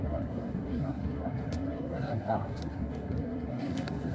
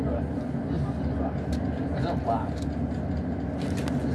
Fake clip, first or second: first